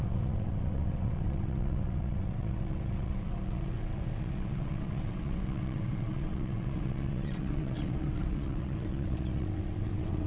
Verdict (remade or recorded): remade